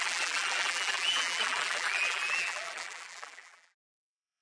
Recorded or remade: remade